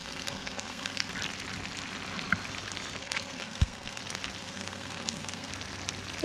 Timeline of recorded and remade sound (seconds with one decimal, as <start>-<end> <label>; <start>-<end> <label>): 0.0-1.1 remade; 1.1-3.0 recorded; 3.0-4.0 remade; 4.0-4.4 recorded; 4.4-5.5 remade; 5.5-6.2 recorded